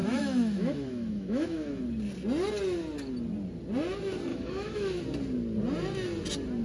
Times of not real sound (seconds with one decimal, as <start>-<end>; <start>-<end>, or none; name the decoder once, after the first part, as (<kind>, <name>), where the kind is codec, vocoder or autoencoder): 0.0-1.8 (autoencoder, DAC-VAE); 4.3-5.0